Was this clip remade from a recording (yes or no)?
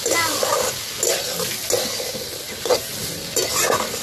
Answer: no